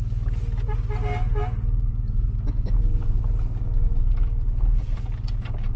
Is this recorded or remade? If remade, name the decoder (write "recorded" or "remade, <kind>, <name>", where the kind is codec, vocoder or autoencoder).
recorded